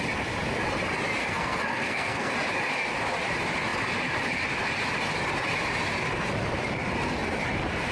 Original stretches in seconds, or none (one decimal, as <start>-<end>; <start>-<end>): 0.0-1.2; 2.3-7.9